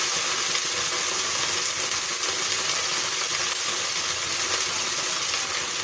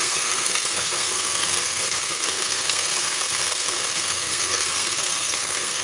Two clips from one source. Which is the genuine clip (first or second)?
first